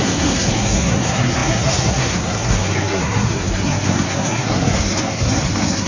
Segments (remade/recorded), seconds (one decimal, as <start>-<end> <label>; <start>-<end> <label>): 0.0-5.9 remade